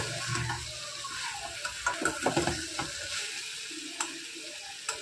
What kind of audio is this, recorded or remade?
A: recorded